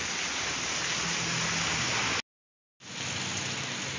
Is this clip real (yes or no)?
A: yes